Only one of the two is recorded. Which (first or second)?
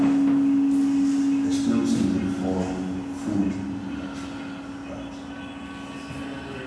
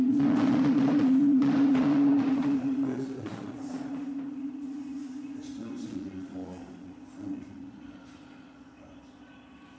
first